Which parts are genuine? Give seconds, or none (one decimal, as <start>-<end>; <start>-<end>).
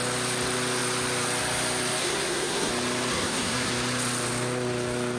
0.0-2.0; 2.7-3.1; 3.7-5.2